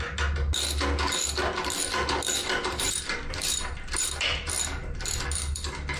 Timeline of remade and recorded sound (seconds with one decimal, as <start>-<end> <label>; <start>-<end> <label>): 0.0-2.4 recorded; 2.4-4.5 remade; 4.5-6.0 recorded